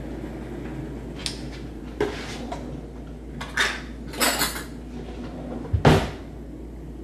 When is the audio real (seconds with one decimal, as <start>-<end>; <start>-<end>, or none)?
0.0-7.0